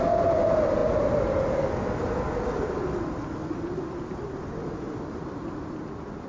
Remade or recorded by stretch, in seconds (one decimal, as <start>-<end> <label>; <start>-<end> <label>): 0.0-6.3 recorded